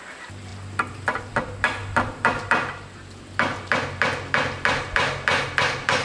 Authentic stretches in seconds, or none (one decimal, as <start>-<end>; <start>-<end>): 0.0-1.8; 2.5-6.0